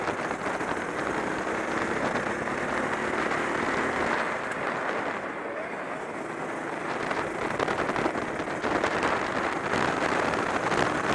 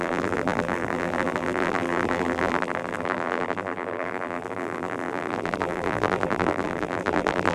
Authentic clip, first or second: first